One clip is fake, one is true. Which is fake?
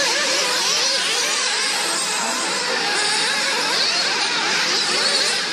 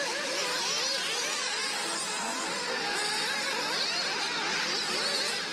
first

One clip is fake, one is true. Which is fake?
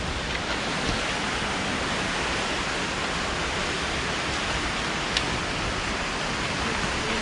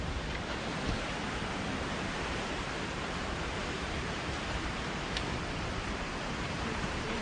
second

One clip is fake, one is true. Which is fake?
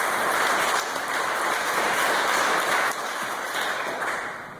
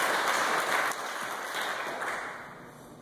first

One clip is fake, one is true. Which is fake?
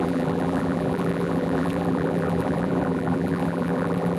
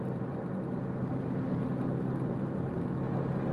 first